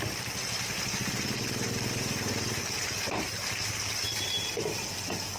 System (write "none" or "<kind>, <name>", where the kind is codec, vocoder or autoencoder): none